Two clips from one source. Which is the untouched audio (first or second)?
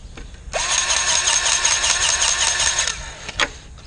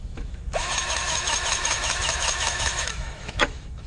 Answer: first